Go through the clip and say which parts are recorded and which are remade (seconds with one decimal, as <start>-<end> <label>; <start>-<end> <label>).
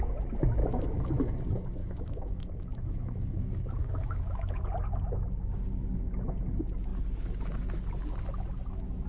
0.0-0.6 recorded; 0.6-1.4 remade; 1.4-1.8 recorded; 1.8-4.6 remade; 4.6-9.1 recorded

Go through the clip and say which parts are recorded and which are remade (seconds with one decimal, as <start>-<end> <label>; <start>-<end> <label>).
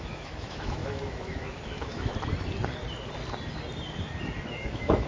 0.0-2.1 remade; 2.1-4.5 recorded; 4.5-5.1 remade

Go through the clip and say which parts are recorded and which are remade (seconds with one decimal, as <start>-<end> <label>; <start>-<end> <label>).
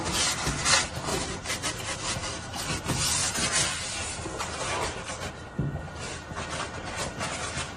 0.0-7.8 recorded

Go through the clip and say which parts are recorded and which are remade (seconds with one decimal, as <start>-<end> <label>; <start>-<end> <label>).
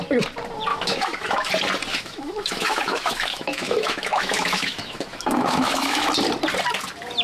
0.0-0.7 recorded; 0.7-1.5 remade; 1.5-1.9 recorded; 1.9-6.1 remade; 6.1-7.2 recorded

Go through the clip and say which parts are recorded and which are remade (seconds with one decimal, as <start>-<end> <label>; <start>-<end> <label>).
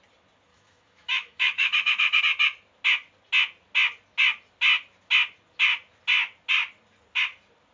0.0-0.5 recorded; 0.5-2.2 remade; 2.2-7.7 recorded